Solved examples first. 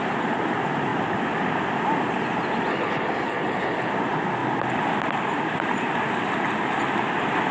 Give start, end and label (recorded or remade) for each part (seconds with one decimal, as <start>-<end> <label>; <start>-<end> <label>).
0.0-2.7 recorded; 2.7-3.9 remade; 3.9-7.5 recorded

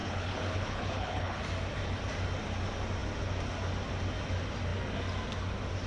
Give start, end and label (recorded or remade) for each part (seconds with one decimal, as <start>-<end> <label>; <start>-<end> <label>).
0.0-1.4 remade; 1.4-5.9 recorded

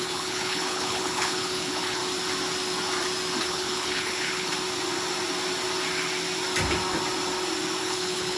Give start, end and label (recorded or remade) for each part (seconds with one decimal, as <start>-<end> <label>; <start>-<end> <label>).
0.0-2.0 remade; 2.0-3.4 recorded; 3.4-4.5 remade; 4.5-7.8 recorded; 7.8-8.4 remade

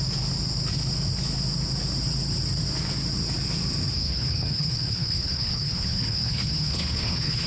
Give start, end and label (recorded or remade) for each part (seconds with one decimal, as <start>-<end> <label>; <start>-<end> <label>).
0.0-4.0 recorded; 4.0-7.5 remade

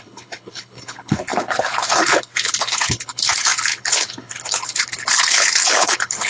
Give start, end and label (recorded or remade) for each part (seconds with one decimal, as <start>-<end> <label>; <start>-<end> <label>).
0.0-6.3 remade